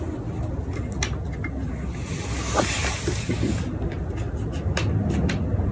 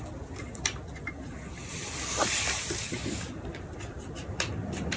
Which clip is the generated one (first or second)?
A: second